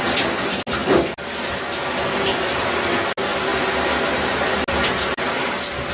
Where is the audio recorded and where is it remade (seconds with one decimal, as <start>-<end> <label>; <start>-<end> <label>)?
0.0-5.9 recorded